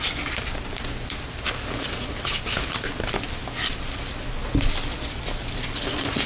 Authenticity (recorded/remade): recorded